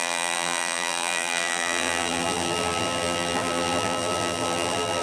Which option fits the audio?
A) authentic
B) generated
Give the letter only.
B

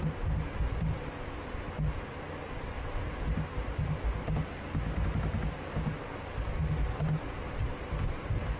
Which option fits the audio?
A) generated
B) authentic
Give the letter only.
B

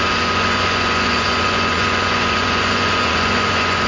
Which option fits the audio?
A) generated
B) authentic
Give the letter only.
A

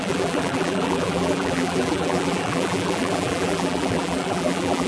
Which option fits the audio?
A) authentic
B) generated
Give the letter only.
B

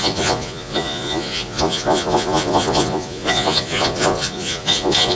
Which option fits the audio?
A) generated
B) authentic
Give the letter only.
A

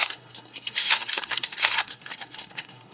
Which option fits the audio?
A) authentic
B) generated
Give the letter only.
B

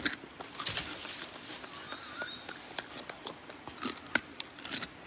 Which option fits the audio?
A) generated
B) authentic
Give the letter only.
B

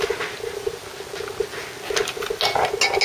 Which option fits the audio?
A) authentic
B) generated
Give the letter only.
A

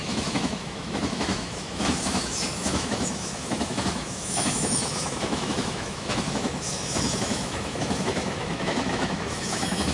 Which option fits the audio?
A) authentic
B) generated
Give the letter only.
B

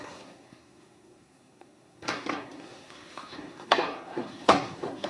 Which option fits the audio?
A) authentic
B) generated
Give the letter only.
B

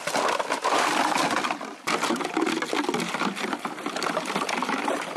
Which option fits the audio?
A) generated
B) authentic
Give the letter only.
B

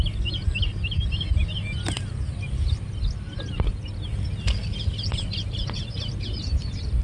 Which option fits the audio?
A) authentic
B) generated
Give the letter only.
A